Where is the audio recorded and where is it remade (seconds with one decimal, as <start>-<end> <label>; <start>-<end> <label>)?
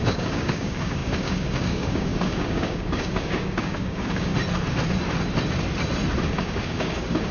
0.0-4.3 remade; 4.3-6.3 recorded; 6.3-7.3 remade